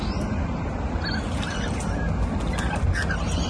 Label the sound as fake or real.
real